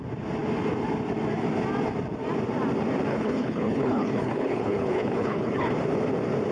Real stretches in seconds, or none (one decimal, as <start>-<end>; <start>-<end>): 0.0-3.1; 5.7-6.5